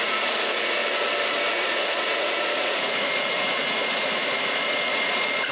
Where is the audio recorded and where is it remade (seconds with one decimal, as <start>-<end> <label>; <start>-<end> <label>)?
0.0-0.8 remade; 0.8-1.5 recorded; 1.5-5.5 remade